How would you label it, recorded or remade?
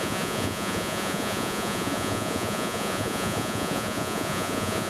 remade